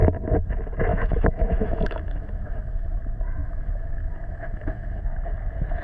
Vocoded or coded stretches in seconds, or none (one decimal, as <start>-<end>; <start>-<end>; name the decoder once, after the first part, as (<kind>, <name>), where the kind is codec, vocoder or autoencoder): 0.9-3.0 (autoencoder, DAC-VAE); 3.4-5.0